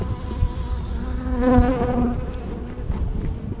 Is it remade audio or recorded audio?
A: recorded